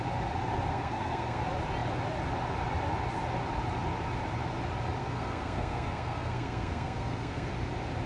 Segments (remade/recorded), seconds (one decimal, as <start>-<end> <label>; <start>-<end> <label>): 0.0-0.7 recorded; 0.7-1.4 remade; 1.4-5.0 recorded; 5.0-7.5 remade; 7.5-8.1 recorded